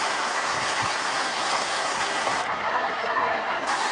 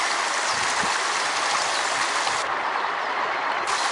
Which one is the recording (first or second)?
second